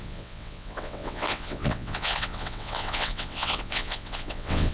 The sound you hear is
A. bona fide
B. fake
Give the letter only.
B